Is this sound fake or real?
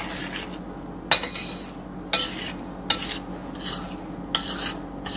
real